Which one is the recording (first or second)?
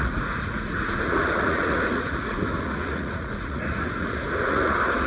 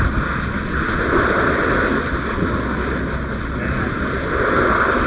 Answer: second